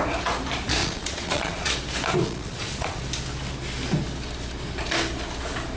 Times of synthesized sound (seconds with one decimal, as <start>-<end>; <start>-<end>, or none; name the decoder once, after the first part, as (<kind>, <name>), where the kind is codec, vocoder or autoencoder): 0.8-1.7 (vocoder, Vocos); 2.2-3.0